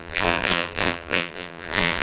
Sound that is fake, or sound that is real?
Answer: fake